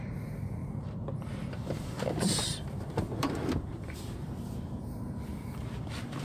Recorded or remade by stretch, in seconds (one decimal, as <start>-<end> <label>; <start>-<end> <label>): 0.0-0.6 recorded; 0.6-4.3 remade; 4.3-5.3 recorded; 5.3-6.2 remade